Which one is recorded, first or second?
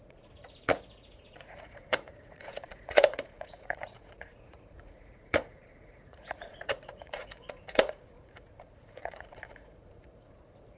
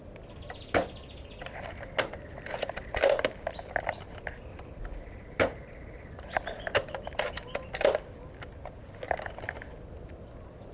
second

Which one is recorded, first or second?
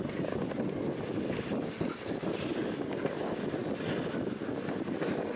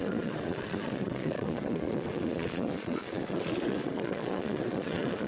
first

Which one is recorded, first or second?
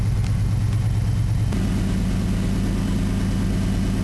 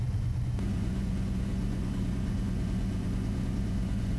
first